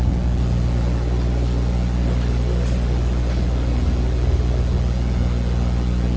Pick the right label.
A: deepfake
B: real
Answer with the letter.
B